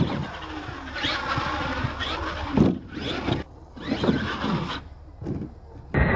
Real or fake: real